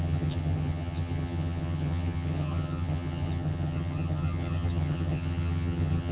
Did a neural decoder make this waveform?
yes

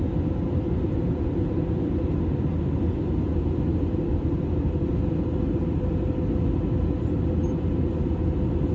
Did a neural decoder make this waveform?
no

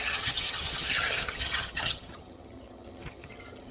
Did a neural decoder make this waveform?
yes